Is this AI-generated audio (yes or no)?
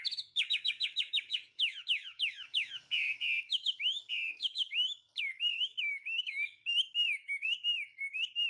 yes